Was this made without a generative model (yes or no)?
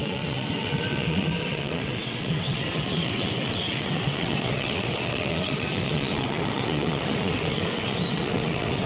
no